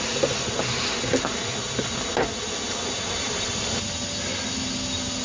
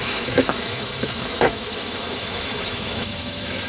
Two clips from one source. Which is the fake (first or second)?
second